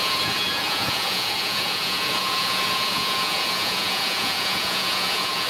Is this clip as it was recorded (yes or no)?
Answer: no